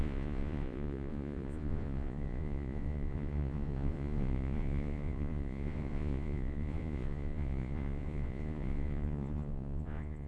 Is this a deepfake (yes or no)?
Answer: yes